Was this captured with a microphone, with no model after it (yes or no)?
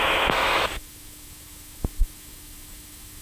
no